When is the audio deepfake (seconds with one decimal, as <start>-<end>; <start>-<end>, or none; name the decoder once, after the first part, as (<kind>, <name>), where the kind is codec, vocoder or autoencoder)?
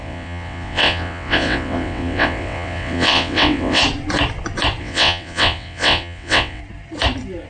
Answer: 0.0-3.8 (vocoder, WaveNeXt); 4.8-6.6